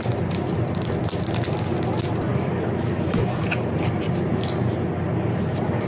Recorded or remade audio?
recorded